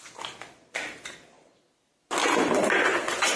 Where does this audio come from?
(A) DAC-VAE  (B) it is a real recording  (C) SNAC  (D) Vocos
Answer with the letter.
B